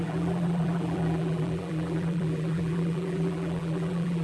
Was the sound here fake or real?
fake